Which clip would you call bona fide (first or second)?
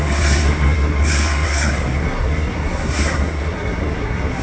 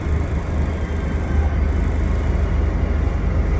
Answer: second